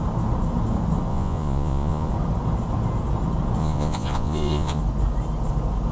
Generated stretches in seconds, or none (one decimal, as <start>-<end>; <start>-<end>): 1.1-2.1; 3.6-4.8